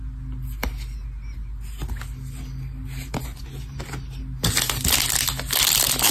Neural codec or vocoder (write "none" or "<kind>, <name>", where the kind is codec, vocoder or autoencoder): none